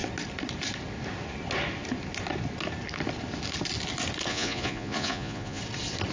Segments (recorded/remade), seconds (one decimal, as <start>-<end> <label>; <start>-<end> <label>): 0.0-4.3 recorded; 4.3-5.6 remade; 5.6-6.1 recorded